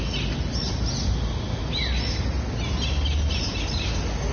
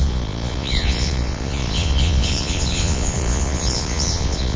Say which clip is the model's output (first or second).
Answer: second